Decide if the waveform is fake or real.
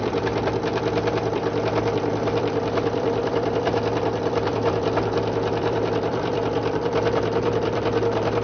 fake